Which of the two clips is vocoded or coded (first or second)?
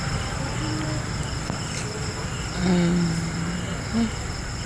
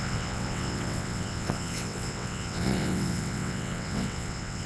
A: second